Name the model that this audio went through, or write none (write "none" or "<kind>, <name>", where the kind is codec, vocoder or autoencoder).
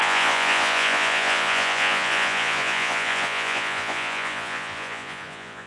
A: vocoder, Vocos